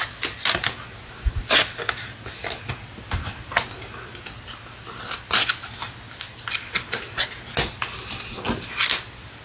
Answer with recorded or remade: recorded